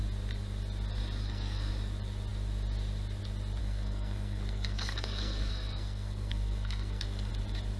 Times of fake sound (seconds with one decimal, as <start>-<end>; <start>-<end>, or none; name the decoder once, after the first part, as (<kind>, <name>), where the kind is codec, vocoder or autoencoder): 1.2-1.7 (codec, SNAC); 3.6-7.3